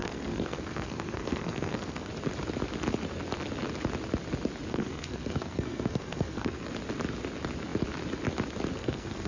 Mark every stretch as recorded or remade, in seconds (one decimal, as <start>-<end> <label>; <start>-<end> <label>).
0.0-2.1 remade; 2.1-4.7 recorded; 4.7-6.7 remade; 6.7-8.8 recorded; 8.8-9.3 remade